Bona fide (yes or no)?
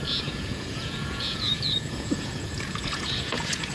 no